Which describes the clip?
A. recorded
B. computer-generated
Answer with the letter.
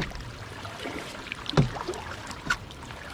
B